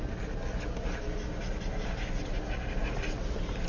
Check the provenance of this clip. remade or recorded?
recorded